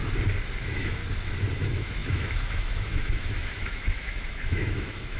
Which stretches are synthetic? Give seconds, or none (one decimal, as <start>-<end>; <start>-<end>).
0.6-1.0; 1.6-5.2